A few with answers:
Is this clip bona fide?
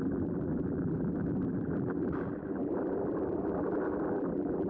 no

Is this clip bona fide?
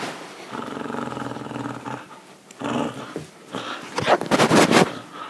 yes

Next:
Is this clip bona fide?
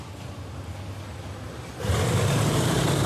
yes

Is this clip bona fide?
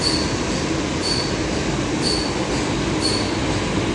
yes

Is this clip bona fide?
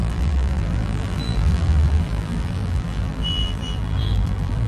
no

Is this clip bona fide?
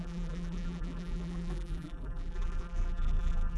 no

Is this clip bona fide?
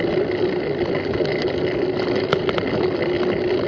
yes